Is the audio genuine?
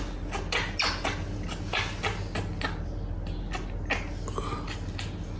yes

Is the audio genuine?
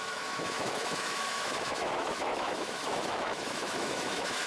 no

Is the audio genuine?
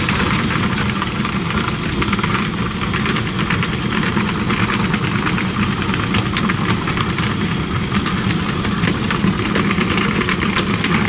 no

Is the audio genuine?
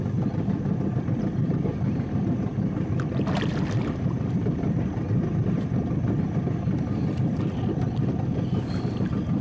yes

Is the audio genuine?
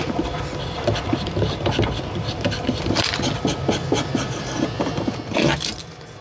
yes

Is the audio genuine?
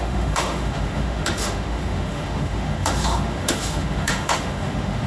no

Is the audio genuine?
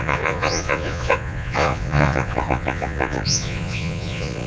no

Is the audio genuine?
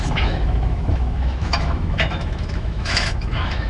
no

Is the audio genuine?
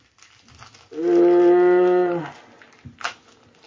yes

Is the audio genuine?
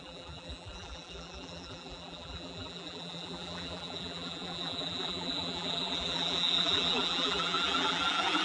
no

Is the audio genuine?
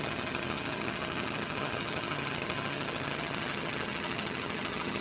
no